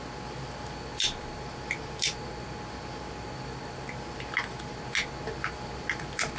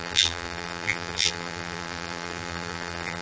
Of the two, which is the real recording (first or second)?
first